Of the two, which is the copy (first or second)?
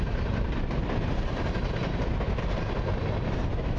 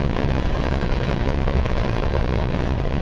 second